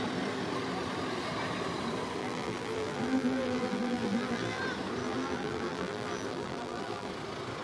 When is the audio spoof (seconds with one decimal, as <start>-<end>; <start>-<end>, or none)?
2.2-4.6; 5.0-7.1